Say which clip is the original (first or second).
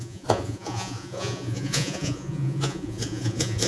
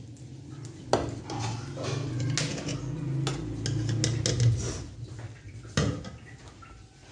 second